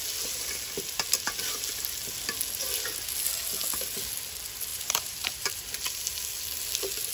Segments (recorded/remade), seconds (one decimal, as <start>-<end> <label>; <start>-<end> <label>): 0.0-4.7 recorded; 4.7-5.5 remade; 5.5-7.1 recorded